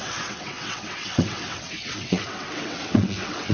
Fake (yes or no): yes